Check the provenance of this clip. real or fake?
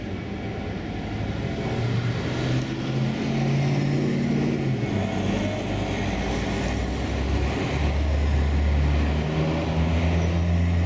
real